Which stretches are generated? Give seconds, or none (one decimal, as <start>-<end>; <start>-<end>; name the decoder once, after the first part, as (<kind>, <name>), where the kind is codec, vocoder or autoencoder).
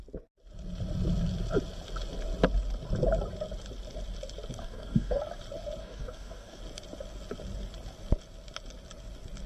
4.6-5.2 (codec, DAC); 5.8-6.6